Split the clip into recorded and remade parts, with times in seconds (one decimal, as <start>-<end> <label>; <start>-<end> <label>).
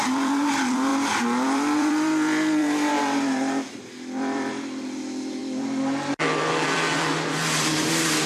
0.0-8.3 remade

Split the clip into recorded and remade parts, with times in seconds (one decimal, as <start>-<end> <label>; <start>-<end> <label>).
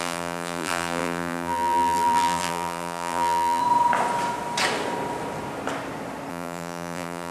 0.0-3.6 remade; 3.6-6.3 recorded; 6.3-7.3 remade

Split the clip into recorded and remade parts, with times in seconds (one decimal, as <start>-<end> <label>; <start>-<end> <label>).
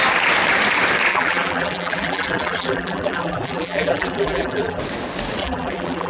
0.0-1.1 recorded; 1.1-4.8 remade; 4.8-5.4 recorded; 5.4-6.1 remade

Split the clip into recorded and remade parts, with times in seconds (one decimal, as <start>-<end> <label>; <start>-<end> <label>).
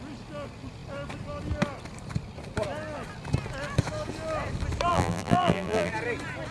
0.0-4.9 recorded; 4.9-5.9 remade; 5.9-6.5 recorded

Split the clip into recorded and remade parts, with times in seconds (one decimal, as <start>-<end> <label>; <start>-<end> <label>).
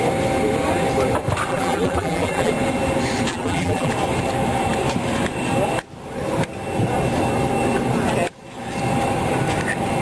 0.0-1.5 recorded; 1.5-2.5 remade; 2.5-3.3 recorded; 3.3-3.9 remade; 3.9-10.0 recorded